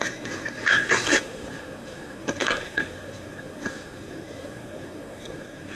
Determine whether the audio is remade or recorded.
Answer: remade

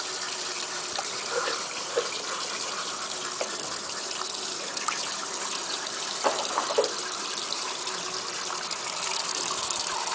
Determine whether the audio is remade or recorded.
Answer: remade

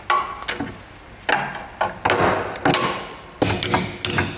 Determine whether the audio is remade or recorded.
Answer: recorded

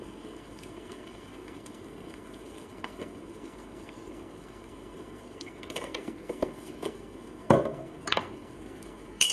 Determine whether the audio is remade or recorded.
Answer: remade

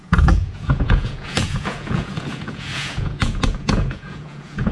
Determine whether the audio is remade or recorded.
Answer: remade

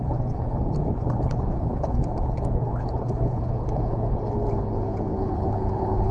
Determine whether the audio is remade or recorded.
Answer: remade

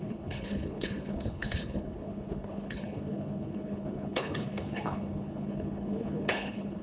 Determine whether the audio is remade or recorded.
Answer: remade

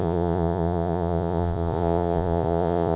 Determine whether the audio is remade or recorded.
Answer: remade